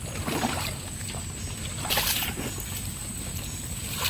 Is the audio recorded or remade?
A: recorded